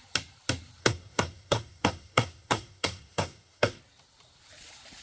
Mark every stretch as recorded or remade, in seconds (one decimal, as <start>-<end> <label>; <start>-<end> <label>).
0.0-0.8 recorded; 0.8-3.8 remade; 3.8-5.0 recorded